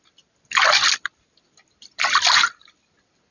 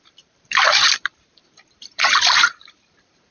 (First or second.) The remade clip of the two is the second